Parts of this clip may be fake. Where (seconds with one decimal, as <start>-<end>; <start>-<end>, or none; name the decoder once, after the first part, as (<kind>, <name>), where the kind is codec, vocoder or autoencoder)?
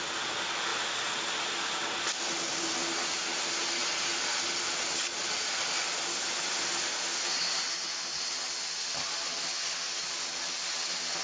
none